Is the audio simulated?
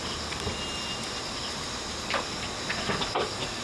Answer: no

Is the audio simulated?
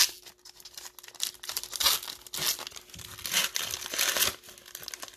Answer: no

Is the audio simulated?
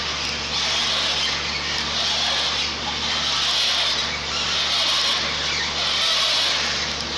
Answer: no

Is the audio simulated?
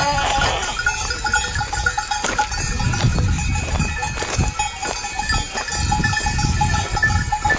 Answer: no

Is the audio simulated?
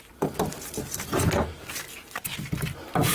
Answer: no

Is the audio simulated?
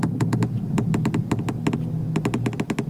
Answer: no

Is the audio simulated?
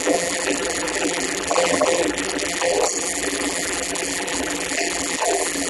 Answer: yes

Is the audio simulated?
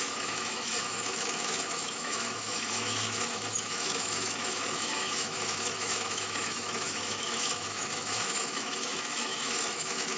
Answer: yes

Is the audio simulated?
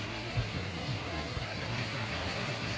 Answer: yes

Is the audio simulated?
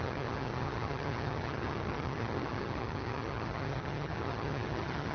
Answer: yes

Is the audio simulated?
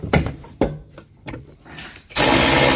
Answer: no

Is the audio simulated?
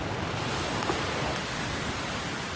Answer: yes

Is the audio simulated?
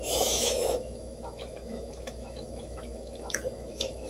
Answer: yes